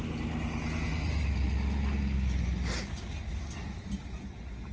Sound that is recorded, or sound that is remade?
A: recorded